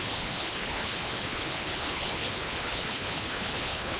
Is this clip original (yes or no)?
no